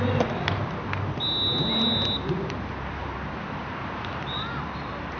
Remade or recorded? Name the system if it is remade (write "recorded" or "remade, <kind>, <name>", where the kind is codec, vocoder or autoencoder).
recorded